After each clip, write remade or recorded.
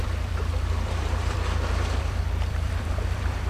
remade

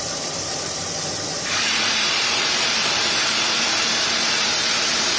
remade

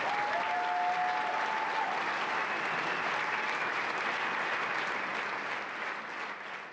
recorded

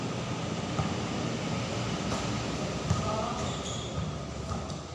recorded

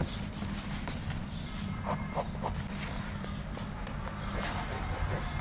remade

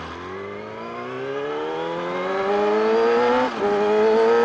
recorded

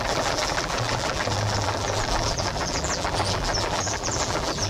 remade